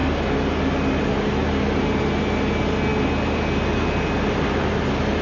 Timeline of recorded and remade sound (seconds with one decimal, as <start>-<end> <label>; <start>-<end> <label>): 0.0-5.2 recorded